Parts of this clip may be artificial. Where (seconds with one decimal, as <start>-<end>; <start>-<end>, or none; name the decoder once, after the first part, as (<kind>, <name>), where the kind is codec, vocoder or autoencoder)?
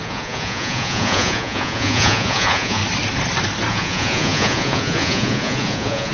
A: 0.0-2.8 (vocoder, Vocos); 3.7-6.1